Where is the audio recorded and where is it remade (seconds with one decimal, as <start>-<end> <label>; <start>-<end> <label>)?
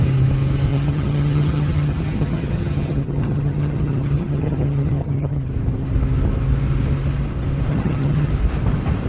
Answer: 0.0-0.7 recorded; 0.7-5.5 remade; 5.5-7.7 recorded; 7.7-8.3 remade; 8.3-9.1 recorded